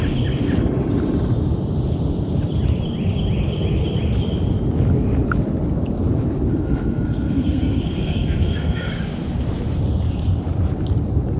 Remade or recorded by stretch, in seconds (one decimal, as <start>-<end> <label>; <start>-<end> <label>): 0.0-6.5 recorded; 6.5-8.9 remade; 8.9-11.4 recorded